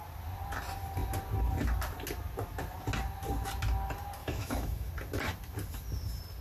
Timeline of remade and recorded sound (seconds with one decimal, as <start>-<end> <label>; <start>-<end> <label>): 0.0-4.2 recorded; 4.2-4.9 remade; 4.9-6.4 recorded